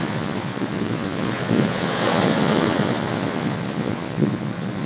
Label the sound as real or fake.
fake